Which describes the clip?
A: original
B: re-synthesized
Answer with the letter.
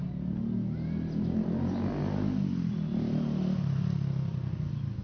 A